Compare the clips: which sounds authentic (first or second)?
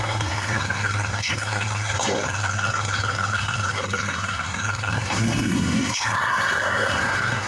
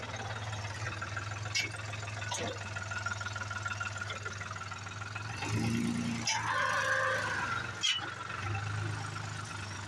second